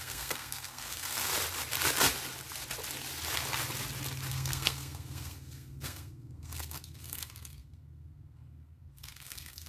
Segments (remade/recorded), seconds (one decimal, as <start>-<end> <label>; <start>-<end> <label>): 0.0-1.3 remade; 1.3-4.3 recorded; 4.3-9.7 remade